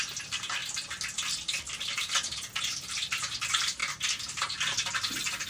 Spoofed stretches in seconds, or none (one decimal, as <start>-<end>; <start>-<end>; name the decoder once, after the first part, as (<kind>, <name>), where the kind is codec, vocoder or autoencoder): 0.0-3.8 (vocoder, BigVGAN v2)